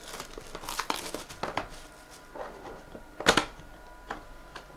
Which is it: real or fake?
real